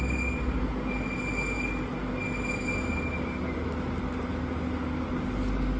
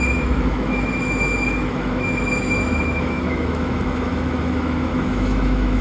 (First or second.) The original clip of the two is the first